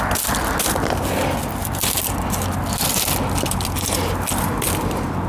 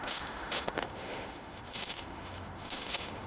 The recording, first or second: first